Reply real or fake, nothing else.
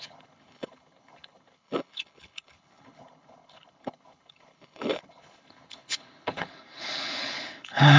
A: fake